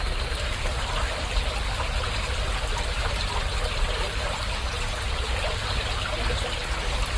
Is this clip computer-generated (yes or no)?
no